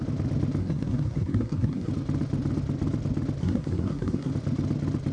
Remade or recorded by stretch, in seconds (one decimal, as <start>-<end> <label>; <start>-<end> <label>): 0.0-0.6 recorded; 0.6-1.9 remade; 1.9-3.4 recorded; 3.4-4.3 remade; 4.3-5.1 recorded